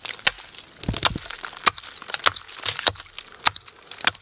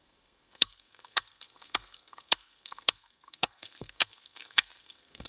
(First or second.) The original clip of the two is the first